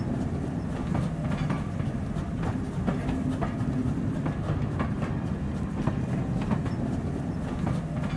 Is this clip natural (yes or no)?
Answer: yes